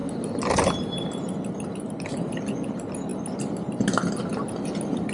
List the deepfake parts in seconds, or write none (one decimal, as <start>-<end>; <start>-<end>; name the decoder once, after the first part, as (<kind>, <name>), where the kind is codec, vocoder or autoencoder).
none